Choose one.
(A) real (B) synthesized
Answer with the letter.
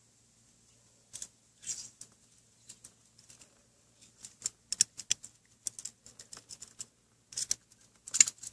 A